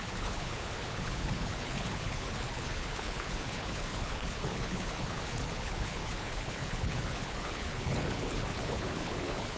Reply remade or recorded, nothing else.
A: remade